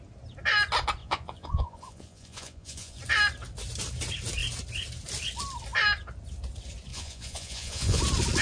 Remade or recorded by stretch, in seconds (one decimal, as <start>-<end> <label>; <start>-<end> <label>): 0.0-1.0 recorded; 1.0-3.0 remade; 3.0-6.9 recorded; 6.9-8.0 remade; 8.0-8.4 recorded

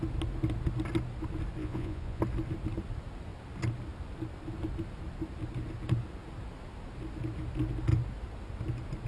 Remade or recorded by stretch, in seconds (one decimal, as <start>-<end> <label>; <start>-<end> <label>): 0.0-1.6 recorded; 1.6-2.2 remade; 2.2-9.1 recorded